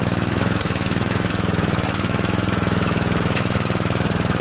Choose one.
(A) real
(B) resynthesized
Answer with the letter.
B